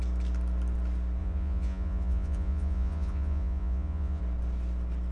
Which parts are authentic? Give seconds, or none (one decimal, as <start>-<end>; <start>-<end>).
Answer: 0.0-1.2; 4.2-5.1